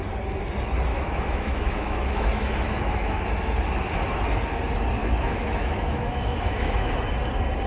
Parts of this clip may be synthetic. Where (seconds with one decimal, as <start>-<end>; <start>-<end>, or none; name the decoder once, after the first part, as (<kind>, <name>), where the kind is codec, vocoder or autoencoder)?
0.9-3.2 (autoencoder, DAC-VAE); 5.0-7.1